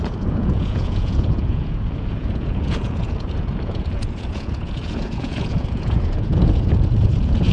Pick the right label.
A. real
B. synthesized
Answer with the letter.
B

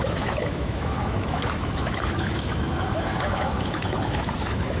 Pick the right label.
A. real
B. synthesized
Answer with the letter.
B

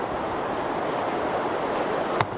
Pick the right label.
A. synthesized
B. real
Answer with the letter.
B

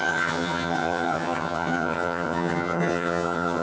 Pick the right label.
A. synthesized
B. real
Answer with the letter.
A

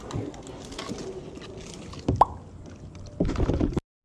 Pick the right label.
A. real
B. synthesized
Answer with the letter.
A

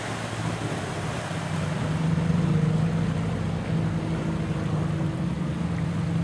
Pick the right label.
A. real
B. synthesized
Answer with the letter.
A